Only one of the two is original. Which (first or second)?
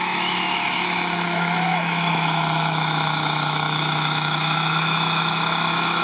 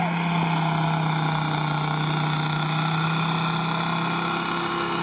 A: second